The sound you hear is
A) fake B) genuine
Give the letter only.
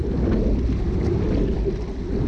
B